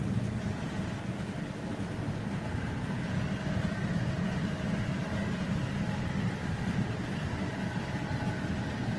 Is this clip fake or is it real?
real